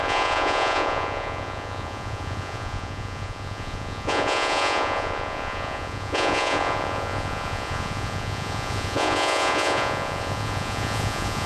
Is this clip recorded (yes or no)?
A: no